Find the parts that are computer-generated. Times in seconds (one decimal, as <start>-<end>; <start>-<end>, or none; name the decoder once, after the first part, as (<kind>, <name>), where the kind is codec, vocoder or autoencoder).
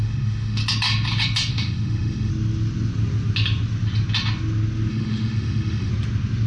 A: 0.0-0.6 (autoencoder, DAC-VAE); 1.5-2.3; 4.9-5.9